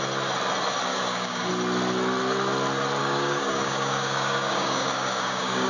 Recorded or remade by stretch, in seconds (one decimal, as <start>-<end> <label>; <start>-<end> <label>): 0.0-0.9 recorded; 0.9-1.5 remade; 1.5-3.0 recorded; 3.0-5.7 remade